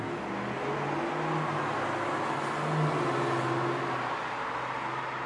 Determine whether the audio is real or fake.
real